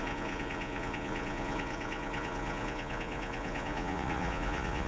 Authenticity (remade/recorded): remade